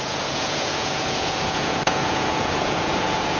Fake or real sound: fake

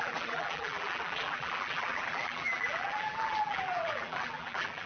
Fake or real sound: fake